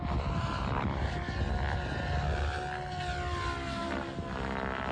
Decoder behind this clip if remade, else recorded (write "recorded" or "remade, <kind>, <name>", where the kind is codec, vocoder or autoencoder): recorded